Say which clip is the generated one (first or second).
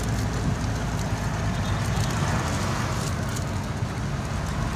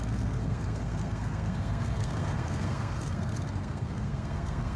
second